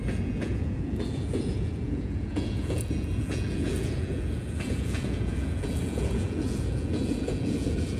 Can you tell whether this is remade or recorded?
remade